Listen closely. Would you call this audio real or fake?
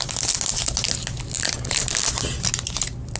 real